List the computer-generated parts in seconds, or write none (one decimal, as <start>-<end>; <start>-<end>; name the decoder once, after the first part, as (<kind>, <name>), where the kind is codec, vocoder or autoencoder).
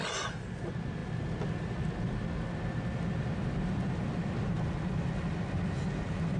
none